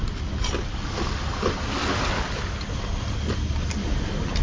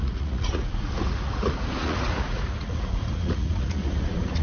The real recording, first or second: first